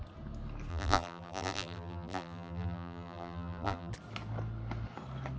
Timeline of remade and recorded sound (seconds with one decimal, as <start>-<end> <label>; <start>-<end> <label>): 0.0-0.7 recorded; 0.7-3.9 remade; 3.9-5.4 recorded